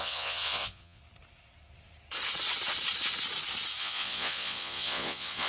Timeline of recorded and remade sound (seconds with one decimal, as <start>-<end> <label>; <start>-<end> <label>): 0.0-1.0 remade; 1.0-3.8 recorded; 3.8-5.5 remade